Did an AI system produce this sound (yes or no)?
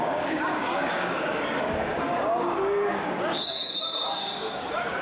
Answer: yes